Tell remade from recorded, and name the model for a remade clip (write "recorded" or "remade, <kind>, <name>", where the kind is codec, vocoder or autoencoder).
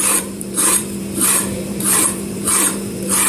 remade, vocoder, BigVGAN v2